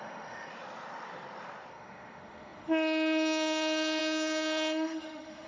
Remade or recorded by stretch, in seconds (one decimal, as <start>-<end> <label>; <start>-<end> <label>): 0.0-0.5 remade; 0.5-1.7 recorded; 1.7-5.5 remade